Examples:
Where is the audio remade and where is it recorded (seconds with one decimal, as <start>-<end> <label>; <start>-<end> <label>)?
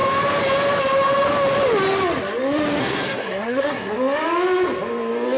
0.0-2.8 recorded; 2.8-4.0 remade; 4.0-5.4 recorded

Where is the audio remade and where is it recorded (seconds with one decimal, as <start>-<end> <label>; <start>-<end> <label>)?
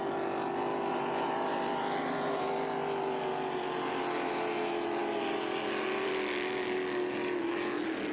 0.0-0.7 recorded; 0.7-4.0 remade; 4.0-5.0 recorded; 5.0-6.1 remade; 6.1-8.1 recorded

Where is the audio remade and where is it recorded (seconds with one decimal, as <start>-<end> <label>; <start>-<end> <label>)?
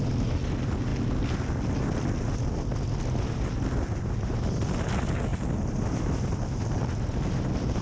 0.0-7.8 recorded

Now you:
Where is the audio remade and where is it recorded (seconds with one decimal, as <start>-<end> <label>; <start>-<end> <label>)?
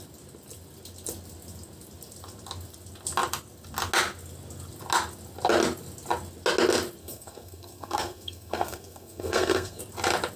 0.0-7.0 recorded; 7.0-9.8 remade; 9.8-10.4 recorded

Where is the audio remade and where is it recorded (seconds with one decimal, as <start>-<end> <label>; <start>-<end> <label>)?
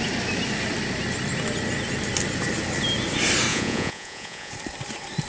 0.0-3.5 recorded; 3.5-4.5 remade; 4.5-5.3 recorded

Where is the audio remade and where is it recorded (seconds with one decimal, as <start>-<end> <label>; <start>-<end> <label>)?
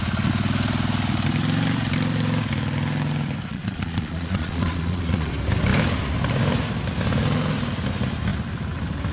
0.0-3.5 recorded; 3.5-5.3 remade; 5.3-9.1 recorded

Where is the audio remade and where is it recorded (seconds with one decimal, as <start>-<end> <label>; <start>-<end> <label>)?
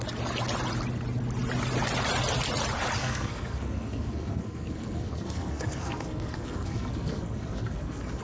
0.0-3.0 recorded; 3.0-8.2 remade